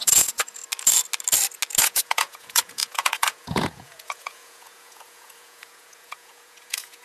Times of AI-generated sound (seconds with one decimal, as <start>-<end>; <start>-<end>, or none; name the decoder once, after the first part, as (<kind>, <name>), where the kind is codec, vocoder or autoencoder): 0.0-0.6 (vocoder, Vocos); 1.8-7.0